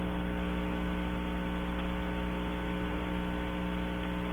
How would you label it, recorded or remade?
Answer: recorded